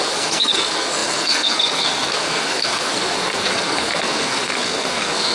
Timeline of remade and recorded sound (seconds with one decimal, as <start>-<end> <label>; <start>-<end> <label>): 0.0-5.3 remade